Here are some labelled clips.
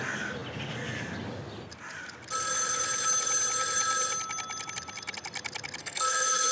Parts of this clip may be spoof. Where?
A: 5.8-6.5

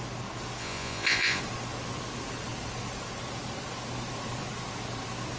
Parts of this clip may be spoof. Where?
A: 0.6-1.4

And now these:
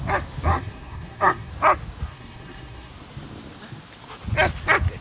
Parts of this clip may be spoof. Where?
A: 0.5-1.5; 2.1-2.9